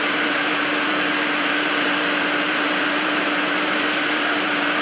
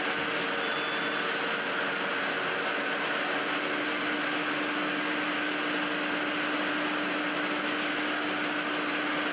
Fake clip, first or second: first